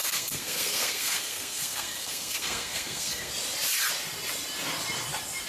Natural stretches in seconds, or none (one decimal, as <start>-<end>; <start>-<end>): 3.3-5.5